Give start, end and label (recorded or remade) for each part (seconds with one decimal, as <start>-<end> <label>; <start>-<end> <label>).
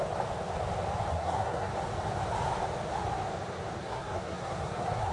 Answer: 0.0-1.1 recorded; 1.1-1.7 remade; 1.7-3.8 recorded; 3.8-5.1 remade